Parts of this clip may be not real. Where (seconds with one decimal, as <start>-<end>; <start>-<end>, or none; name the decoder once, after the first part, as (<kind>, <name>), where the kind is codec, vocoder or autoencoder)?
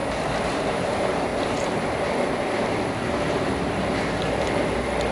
0.5-1.3 (vocoder, BigVGAN v2); 3.1-5.1